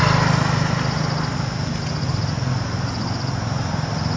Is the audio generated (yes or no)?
no